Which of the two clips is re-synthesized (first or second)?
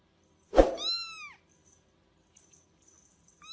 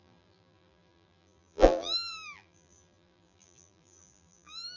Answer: second